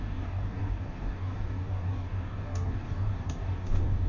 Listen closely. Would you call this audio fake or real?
fake